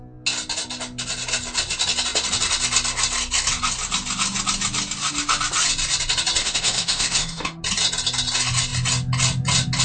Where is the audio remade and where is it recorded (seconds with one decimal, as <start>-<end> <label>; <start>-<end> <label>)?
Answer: 0.0-6.4 recorded; 6.4-7.6 remade; 7.6-9.8 recorded